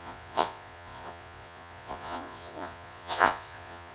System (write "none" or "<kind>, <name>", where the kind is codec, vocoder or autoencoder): vocoder, Vocos